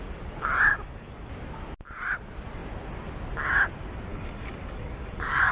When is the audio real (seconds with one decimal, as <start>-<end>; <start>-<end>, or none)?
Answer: 0.0-0.7; 1.3-4.1

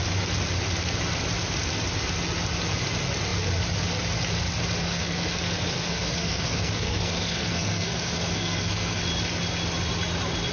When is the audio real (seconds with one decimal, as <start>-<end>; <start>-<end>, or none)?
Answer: 0.0-4.8; 9.0-10.5

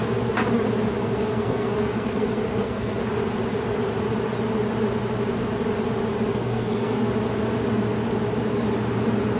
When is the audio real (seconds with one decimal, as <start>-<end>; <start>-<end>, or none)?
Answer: 0.0-1.0; 3.0-6.3; 7.1-9.4

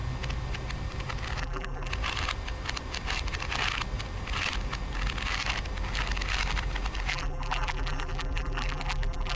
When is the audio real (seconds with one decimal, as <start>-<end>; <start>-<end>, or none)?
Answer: 0.0-1.4; 1.9-7.1

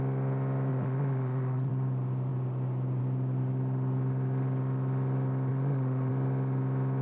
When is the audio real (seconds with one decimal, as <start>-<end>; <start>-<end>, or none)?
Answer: 0.0-0.7; 1.7-5.5; 6.1-7.0

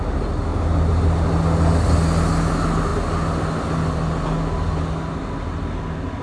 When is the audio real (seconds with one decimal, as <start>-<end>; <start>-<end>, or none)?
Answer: 0.0-6.2

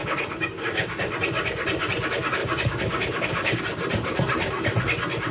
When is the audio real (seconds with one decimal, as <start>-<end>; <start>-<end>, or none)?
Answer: 1.1-2.4; 3.6-5.3